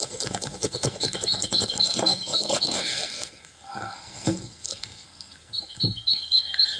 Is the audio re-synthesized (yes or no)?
yes